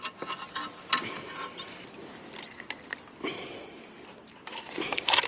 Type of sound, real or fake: real